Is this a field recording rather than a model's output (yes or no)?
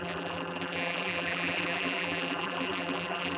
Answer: no